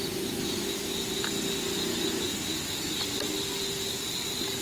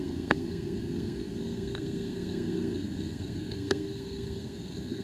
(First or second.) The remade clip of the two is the second